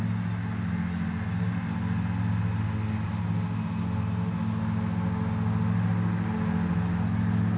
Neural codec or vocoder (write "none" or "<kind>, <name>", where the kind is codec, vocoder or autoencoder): none